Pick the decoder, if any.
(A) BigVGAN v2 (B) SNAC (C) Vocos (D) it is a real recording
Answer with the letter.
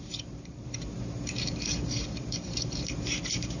A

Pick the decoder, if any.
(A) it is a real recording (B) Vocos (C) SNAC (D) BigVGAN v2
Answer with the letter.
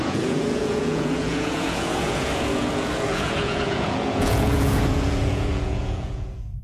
B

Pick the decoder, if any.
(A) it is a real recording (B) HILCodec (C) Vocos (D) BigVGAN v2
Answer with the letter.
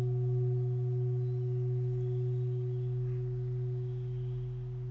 A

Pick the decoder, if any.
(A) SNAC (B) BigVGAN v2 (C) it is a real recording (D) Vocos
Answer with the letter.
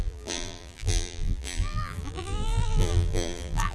B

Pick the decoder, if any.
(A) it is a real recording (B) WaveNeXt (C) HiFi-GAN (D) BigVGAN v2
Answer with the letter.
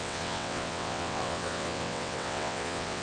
B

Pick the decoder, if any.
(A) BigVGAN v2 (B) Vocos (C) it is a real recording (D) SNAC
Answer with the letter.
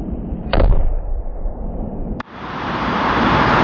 A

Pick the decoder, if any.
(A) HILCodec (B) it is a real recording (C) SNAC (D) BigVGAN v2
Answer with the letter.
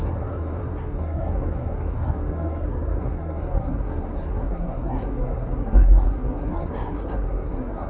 C